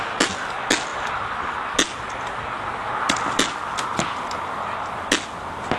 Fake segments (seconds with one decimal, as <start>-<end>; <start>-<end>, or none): none

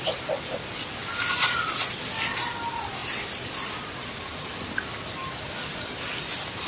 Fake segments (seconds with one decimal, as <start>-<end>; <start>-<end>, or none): 3.0-3.9; 5.2-6.2

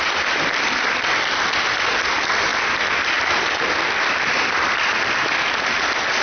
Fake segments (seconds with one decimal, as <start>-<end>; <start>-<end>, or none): 0.0-2.5; 3.4-6.2

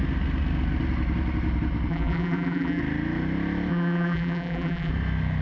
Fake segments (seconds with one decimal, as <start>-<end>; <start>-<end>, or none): 1.9-2.8; 3.7-4.9

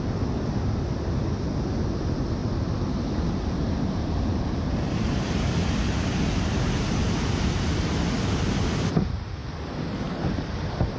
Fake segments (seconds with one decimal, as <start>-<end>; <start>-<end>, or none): 2.4-7.4